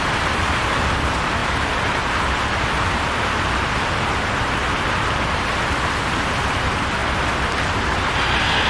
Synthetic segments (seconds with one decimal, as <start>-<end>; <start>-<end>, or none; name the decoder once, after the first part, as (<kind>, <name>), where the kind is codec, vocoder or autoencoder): 1.4-2.3 (vocoder, BigVGAN v2); 4.6-5.5